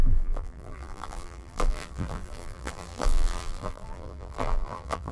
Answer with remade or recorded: remade